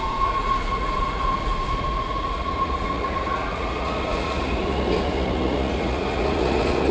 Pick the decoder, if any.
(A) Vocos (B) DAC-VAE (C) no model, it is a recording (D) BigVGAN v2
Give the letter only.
A